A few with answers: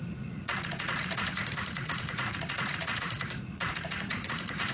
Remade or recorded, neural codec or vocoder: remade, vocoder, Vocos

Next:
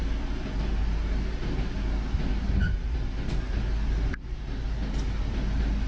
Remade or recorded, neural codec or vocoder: recorded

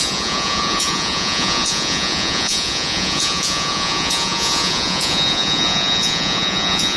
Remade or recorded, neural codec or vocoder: remade, vocoder, Vocos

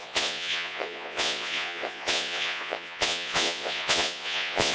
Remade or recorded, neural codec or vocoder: remade, vocoder, Vocos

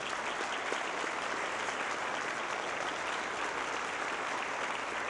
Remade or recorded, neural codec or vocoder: recorded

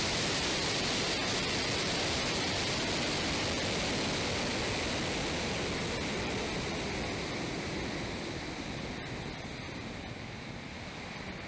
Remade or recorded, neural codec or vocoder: recorded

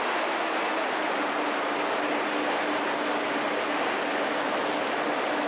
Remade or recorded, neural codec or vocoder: recorded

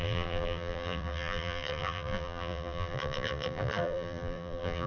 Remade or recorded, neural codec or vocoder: remade, vocoder, BigVGAN v2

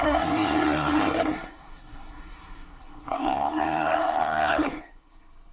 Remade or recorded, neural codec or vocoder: remade, codec, SNAC